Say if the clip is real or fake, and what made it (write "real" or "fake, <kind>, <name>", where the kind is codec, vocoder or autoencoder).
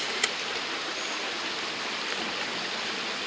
real